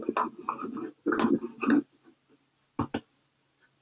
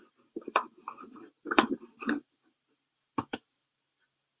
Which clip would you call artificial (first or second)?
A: second